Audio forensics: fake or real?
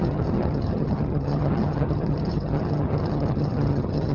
fake